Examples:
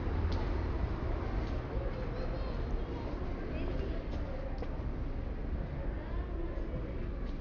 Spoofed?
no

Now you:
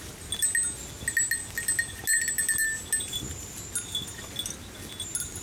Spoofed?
no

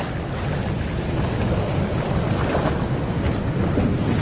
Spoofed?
no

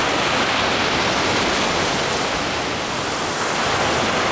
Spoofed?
no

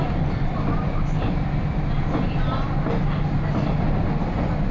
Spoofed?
no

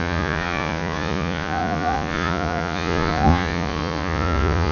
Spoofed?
yes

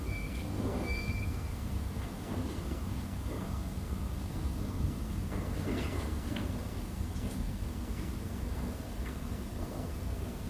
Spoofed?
yes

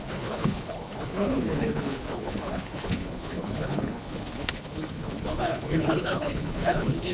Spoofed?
yes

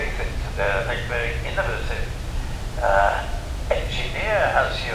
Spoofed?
no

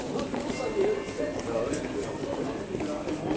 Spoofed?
no